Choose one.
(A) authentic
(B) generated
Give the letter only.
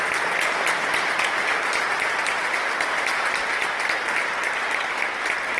A